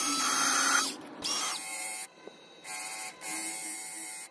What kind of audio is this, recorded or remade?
remade